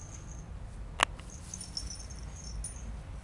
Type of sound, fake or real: real